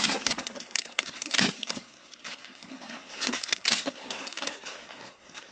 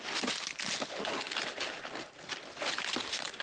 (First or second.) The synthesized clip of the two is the first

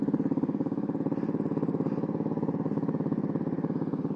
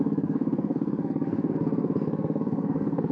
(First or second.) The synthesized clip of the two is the second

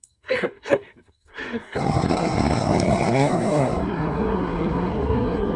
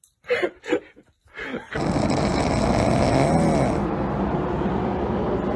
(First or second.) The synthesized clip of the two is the first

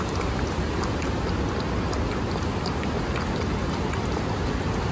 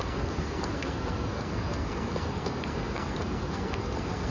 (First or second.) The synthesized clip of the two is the second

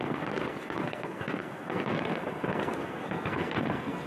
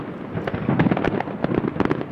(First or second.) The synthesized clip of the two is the first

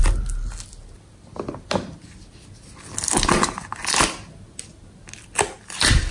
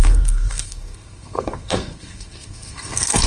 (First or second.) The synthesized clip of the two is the second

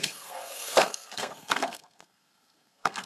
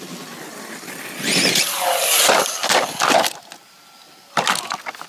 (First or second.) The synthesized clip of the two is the first